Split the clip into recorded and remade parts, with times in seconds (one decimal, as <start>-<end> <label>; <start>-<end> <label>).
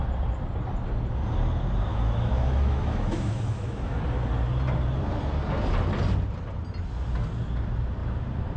0.0-1.9 recorded; 1.9-4.0 remade; 4.0-8.6 recorded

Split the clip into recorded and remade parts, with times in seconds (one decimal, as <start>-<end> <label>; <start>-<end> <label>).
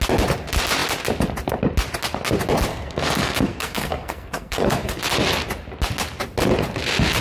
0.0-2.7 recorded; 2.7-5.0 remade; 5.0-7.2 recorded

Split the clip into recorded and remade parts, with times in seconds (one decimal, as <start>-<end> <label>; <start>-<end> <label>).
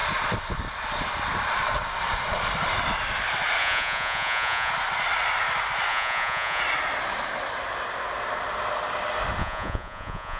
0.0-3.6 recorded; 3.6-4.7 remade; 4.7-5.9 recorded; 5.9-6.6 remade; 6.6-9.4 recorded; 9.4-10.4 remade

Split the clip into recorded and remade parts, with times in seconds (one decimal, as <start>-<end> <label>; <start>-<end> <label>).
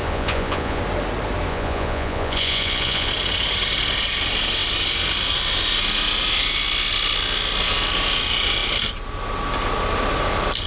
0.0-0.8 remade; 0.8-1.5 recorded; 1.5-3.1 remade; 3.1-10.7 recorded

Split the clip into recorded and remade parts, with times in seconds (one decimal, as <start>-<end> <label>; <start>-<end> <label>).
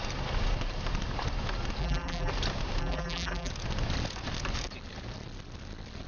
0.0-1.8 recorded; 1.8-2.3 remade; 2.3-2.8 recorded; 2.8-3.5 remade; 3.5-6.1 recorded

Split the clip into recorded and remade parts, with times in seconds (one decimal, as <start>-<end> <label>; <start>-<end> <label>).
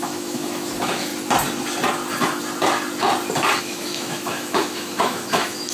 0.0-1.1 remade; 1.1-3.6 recorded; 3.6-5.7 remade